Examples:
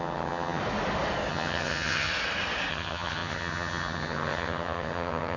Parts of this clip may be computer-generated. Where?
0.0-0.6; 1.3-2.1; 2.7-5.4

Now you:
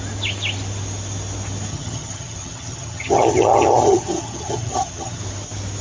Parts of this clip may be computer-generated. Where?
1.7-5.2

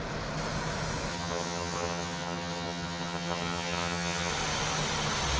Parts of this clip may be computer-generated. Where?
1.1-4.3

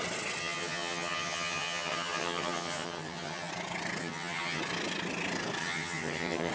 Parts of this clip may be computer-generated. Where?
0.4-3.5; 4.0-4.6; 5.6-6.5

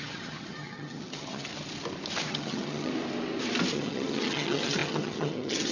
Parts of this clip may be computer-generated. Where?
0.0-1.5; 2.3-2.9; 3.7-5.7

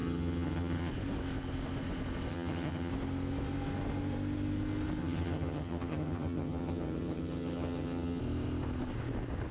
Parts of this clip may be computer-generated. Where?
0.0-0.9; 2.3-2.9; 5.0-8.2